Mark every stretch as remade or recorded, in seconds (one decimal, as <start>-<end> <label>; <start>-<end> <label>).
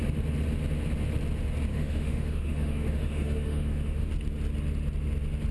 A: 0.0-1.7 recorded; 1.7-4.1 remade; 4.1-5.5 recorded